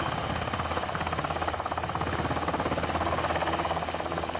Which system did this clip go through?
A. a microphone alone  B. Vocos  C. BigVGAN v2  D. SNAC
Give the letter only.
A